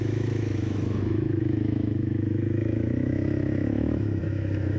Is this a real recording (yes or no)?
no